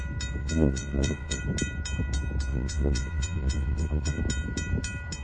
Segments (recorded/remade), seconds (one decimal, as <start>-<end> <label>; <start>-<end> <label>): 0.0-0.4 recorded; 0.4-1.4 remade; 1.4-2.5 recorded; 2.5-4.2 remade; 4.2-5.2 recorded